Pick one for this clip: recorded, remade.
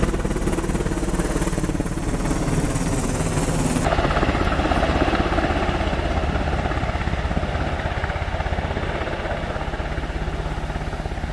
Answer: recorded